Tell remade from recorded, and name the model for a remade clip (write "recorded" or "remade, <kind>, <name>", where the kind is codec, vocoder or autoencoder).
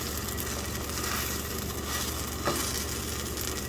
recorded